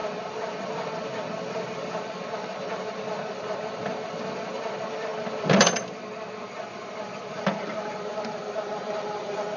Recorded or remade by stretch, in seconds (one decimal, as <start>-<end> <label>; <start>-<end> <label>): 0.0-9.6 remade